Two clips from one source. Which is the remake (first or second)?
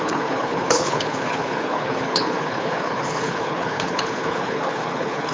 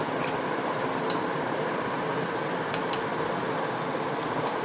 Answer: first